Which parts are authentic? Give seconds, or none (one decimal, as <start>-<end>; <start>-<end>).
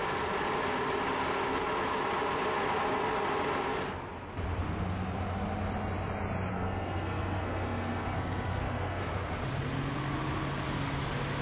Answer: 0.0-6.5; 9.1-11.4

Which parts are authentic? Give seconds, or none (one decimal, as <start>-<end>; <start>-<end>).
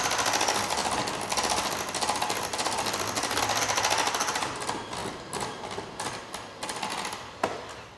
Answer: 0.0-8.0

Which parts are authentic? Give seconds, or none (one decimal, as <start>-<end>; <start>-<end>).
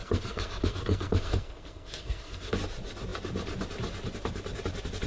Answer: 2.5-5.1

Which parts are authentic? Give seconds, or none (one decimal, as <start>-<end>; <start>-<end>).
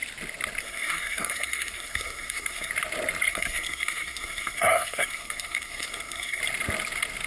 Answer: 0.0-0.6; 2.7-3.3; 6.4-7.3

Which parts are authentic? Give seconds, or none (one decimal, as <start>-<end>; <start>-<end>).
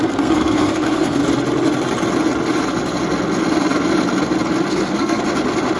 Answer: 1.2-4.7; 5.2-5.8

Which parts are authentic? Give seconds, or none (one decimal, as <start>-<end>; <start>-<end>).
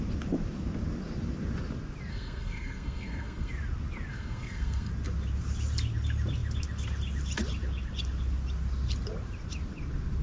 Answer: 0.0-2.1; 3.5-4.1; 4.9-10.2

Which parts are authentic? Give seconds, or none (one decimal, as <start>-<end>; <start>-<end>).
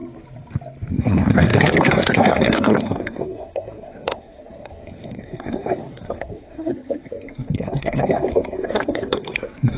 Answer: 0.0-0.9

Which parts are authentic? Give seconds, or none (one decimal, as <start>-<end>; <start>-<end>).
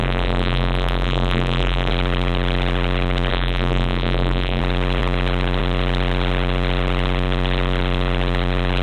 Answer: 1.9-3.3; 4.6-8.8